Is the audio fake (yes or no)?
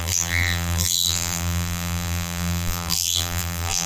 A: yes